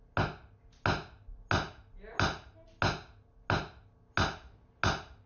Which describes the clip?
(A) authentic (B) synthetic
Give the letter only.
A